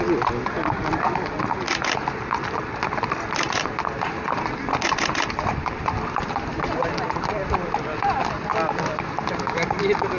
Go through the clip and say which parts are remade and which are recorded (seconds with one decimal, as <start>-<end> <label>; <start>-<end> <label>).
0.0-10.2 recorded